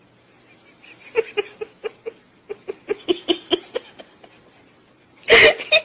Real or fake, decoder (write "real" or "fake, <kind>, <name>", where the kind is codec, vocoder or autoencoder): real